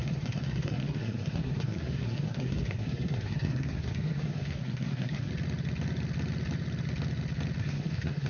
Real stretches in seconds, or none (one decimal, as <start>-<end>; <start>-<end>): 5.3-7.6